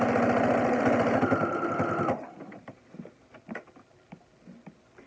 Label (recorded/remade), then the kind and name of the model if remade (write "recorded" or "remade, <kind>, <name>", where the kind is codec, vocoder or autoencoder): recorded